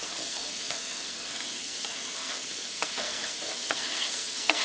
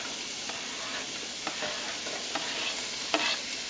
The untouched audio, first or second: second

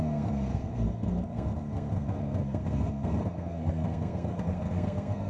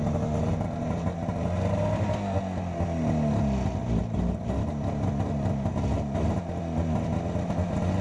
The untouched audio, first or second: second